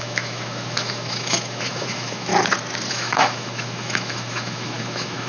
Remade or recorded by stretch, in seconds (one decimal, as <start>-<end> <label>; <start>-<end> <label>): 0.0-2.3 remade; 2.3-2.9 recorded; 2.9-5.3 remade